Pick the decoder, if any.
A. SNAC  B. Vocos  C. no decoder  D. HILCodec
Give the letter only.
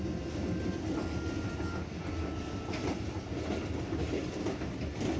C